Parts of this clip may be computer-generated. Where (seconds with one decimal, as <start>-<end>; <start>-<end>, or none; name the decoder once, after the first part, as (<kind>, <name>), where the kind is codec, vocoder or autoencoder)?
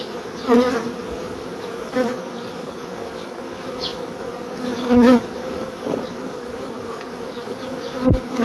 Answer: 0.0-8.4 (codec, DAC)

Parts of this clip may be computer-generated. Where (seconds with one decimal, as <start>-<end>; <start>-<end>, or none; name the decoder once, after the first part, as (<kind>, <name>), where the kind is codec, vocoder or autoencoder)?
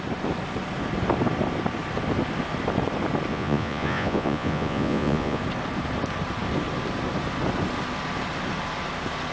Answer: 3.3-5.4 (vocoder, Vocos)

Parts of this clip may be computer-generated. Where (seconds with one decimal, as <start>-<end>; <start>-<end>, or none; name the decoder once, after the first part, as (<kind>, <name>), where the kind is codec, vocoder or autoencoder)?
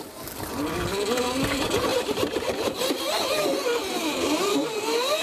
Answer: 1.9-5.2 (vocoder, BigVGAN v2)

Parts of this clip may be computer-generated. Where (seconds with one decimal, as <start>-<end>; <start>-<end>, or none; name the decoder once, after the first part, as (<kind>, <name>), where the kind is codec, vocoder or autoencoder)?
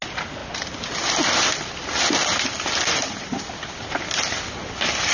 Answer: none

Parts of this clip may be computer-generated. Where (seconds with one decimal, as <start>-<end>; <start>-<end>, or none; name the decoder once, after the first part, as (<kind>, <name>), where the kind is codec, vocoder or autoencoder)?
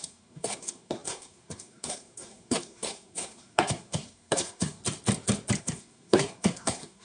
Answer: 0.0-4.8 (codec, SNAC); 5.6-7.0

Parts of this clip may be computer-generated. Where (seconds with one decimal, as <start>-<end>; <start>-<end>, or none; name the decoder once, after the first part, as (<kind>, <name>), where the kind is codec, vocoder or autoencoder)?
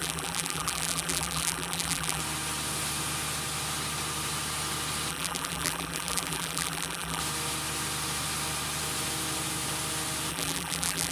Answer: 0.0-2.2 (vocoder, BigVGAN v2); 5.1-7.2; 10.3-11.1